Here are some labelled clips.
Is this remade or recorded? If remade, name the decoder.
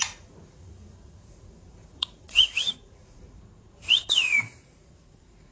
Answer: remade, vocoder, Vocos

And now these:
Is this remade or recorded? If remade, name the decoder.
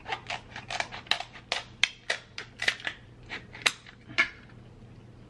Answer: recorded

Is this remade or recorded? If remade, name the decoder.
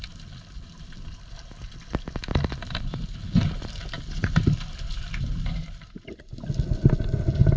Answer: recorded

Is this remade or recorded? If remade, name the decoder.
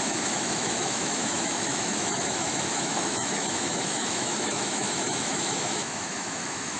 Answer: remade, autoencoder, DAC-VAE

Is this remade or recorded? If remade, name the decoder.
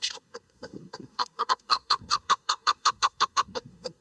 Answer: remade, codec, SNAC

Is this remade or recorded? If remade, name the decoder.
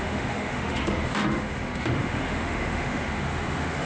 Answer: remade, autoencoder, DAC-VAE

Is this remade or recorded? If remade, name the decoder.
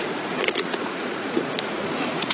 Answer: remade, vocoder, Vocos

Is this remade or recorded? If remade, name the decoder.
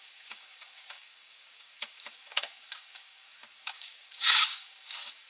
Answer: remade, codec, DAC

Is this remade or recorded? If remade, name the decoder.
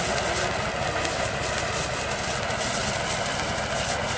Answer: recorded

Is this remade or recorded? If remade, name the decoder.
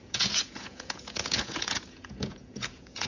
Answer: remade, vocoder, Vocos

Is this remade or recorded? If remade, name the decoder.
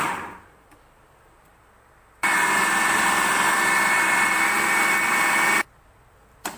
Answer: remade, vocoder, BigVGAN v2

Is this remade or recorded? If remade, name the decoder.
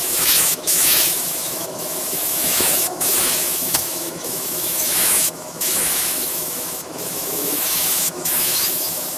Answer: remade, autoencoder, DAC-VAE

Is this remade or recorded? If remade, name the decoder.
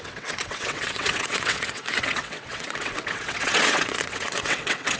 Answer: remade, vocoder, WaveNeXt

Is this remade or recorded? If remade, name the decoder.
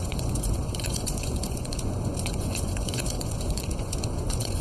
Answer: remade, vocoder, Vocos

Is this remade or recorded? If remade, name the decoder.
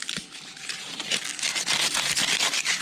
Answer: recorded